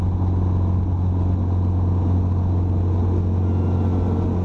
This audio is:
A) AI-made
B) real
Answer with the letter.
B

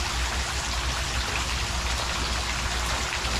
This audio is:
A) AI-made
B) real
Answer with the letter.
B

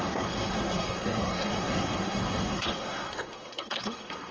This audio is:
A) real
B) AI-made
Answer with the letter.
B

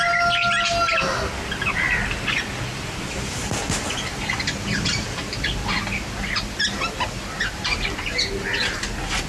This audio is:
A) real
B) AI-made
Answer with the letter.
A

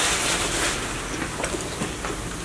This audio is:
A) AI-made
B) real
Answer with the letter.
B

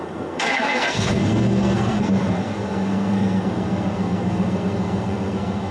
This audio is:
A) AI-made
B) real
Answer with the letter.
A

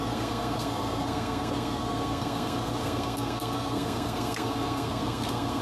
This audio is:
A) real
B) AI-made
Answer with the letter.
B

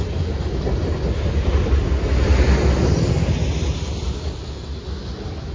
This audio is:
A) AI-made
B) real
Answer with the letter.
B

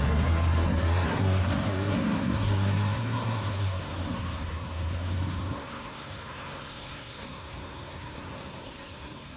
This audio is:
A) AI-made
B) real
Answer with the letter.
A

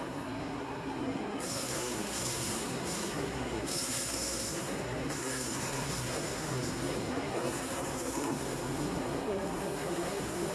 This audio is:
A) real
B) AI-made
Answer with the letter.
B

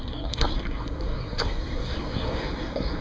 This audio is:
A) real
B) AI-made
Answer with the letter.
B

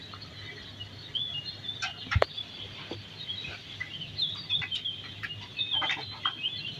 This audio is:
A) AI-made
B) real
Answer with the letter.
B